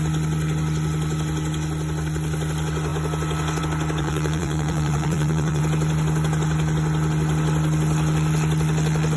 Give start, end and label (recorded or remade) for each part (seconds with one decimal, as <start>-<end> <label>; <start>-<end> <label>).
0.0-4.0 recorded; 4.0-5.6 remade; 5.6-9.2 recorded